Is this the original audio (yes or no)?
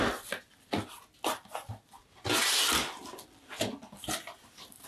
yes